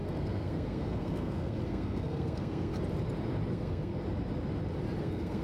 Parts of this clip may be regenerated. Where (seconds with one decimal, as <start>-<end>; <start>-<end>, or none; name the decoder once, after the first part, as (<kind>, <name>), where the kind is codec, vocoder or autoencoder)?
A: 0.0-2.7 (codec, SNAC); 3.5-3.9; 5.0-5.4